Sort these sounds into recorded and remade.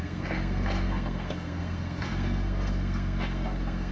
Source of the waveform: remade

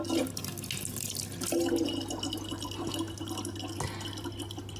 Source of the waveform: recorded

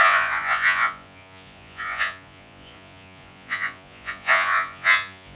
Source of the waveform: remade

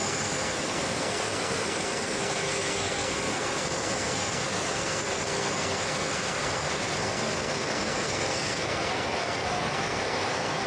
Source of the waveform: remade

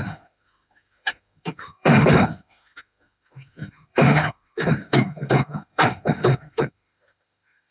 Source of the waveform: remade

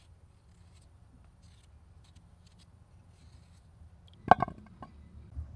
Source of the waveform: recorded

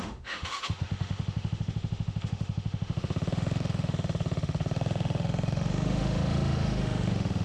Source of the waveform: remade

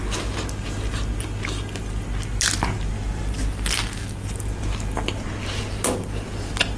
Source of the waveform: recorded